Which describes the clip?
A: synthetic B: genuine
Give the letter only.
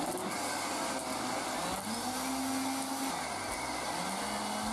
B